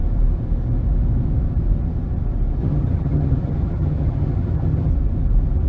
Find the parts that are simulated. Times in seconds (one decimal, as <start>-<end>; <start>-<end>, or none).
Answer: 2.6-4.9